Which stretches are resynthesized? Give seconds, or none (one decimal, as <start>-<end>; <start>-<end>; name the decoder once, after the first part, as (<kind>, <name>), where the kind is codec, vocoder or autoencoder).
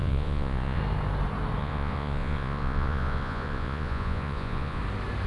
0.0-0.8 (vocoder, Vocos); 1.6-4.8